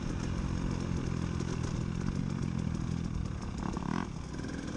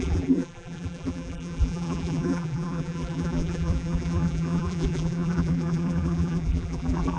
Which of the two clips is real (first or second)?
first